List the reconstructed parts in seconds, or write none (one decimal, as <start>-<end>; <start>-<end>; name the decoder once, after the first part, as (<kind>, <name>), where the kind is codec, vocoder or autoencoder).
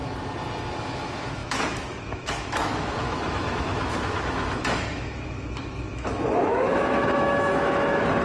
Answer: 0.8-8.2 (autoencoder, DAC-VAE)